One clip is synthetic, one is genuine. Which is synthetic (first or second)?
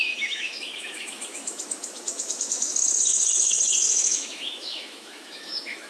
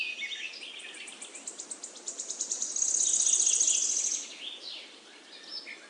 first